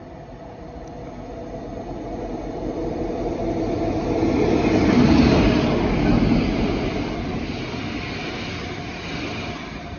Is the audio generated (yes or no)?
no